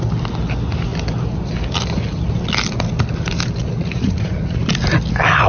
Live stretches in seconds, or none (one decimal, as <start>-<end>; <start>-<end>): 0.0-3.6; 4.6-5.5